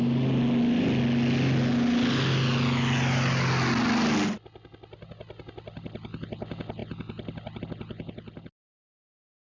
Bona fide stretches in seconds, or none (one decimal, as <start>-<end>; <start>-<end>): 0.0-9.4